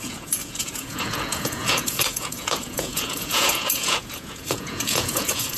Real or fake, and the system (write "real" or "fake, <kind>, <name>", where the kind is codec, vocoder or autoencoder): fake, vocoder, Vocos